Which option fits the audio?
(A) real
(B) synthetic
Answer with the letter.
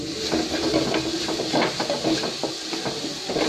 A